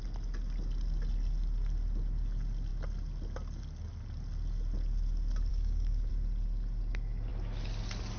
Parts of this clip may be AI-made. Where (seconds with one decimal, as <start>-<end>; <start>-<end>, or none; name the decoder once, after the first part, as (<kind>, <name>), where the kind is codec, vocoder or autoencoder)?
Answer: 5.5-6.1 (codec, DAC)